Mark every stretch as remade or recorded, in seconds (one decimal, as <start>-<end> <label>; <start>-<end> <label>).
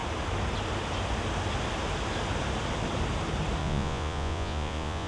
0.0-3.6 recorded; 3.6-5.1 remade